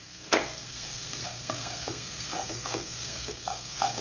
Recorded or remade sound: remade